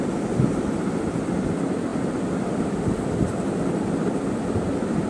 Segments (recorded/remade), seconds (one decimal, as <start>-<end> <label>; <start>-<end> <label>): 0.0-5.1 recorded